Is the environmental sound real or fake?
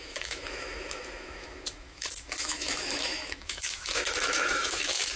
fake